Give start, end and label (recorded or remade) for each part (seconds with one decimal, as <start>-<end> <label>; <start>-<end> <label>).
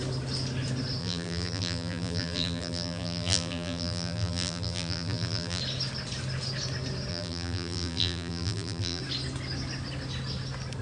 0.0-1.0 recorded; 1.0-5.6 remade; 5.6-7.1 recorded; 7.1-9.0 remade; 9.0-10.8 recorded